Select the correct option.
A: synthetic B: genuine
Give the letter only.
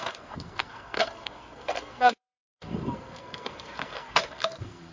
A